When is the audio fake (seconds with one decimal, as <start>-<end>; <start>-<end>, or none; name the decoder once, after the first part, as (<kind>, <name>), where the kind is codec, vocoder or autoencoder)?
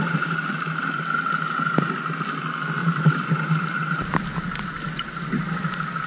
2.8-4.0 (vocoder, BigVGAN v2)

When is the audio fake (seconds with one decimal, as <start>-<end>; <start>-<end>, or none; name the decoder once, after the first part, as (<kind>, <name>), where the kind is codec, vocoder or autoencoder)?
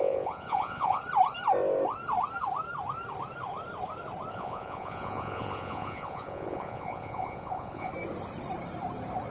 0.0-1.0 (vocoder, Vocos); 4.3-7.9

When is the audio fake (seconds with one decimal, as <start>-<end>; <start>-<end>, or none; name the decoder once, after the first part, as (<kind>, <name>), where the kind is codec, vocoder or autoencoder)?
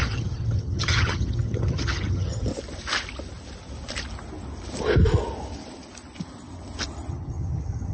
0.0-2.5 (vocoder, HiFi-GAN); 7.1-7.9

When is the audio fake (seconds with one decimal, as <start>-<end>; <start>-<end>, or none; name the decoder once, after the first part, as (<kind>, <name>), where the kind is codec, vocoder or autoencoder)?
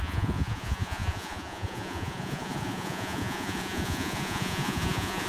0.0-5.3 (vocoder, Vocos)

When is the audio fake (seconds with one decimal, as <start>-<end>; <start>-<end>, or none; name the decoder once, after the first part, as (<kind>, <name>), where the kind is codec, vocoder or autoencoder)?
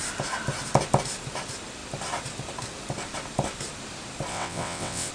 4.3-5.1 (vocoder, WaveNeXt)